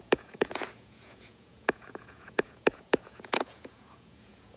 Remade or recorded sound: remade